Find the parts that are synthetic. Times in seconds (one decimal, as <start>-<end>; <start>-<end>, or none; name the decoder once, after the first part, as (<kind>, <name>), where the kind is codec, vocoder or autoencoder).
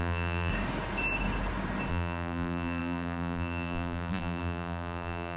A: 0.0-0.5 (vocoder, BigVGAN v2); 1.9-5.4